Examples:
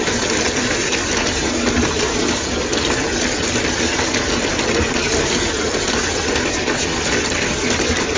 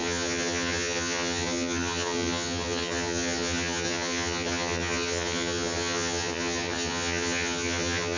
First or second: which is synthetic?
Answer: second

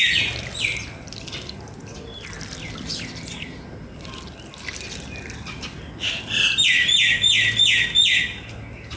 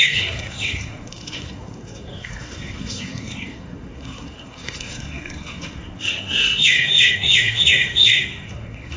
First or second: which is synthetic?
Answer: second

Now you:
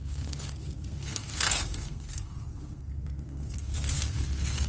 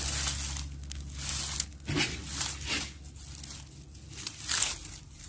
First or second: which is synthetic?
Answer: first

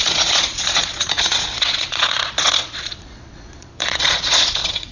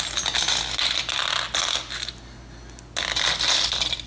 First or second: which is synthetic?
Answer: first